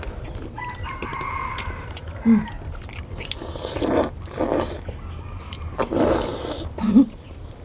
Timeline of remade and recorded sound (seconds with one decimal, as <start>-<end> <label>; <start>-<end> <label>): 0.0-1.1 recorded; 1.1-2.2 remade; 2.2-7.6 recorded